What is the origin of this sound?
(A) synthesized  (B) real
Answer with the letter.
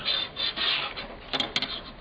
B